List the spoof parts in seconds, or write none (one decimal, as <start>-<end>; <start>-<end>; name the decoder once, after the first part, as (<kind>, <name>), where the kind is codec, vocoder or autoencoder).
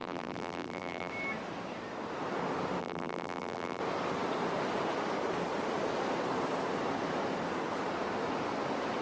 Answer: 0.0-1.1 (vocoder, BigVGAN v2); 2.8-3.8